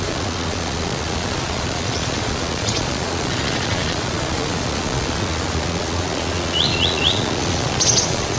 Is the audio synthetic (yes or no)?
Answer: yes